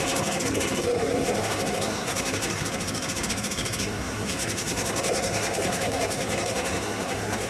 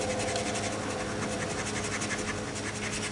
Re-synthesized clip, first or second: first